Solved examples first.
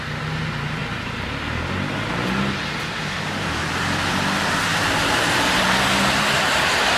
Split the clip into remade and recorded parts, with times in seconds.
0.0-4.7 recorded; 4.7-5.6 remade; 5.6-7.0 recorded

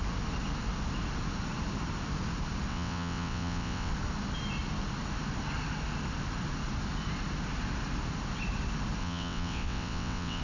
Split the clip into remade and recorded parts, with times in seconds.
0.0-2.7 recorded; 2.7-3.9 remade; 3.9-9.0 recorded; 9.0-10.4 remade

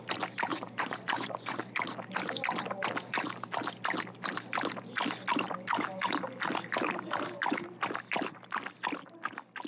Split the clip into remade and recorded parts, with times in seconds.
0.0-0.5 recorded; 0.5-1.6 remade; 1.6-9.7 recorded

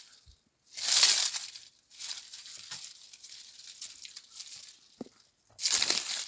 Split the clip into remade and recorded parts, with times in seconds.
0.0-6.3 recorded